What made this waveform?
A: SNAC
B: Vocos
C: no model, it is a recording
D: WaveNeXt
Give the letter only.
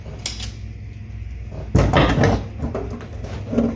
C